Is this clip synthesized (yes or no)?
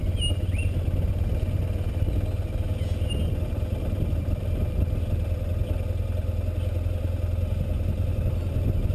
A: no